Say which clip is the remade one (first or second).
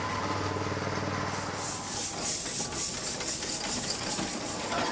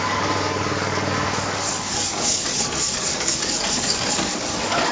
second